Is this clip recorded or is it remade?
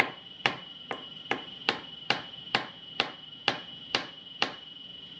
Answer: remade